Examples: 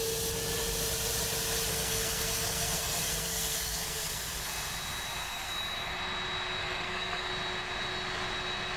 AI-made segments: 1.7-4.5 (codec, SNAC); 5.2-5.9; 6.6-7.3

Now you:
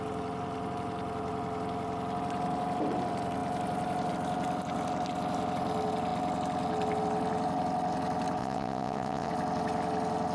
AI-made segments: 8.4-9.3 (vocoder, WaveNeXt)

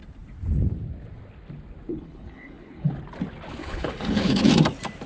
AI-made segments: 1.9-2.9 (codec, HILCodec); 3.6-4.5